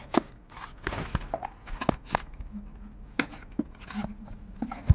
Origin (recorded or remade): recorded